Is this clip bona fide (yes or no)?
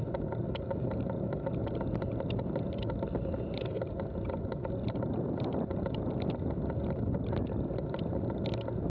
yes